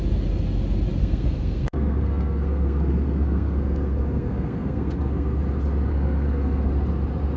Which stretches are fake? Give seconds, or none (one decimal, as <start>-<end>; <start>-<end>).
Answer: 1.0-5.4; 5.9-6.7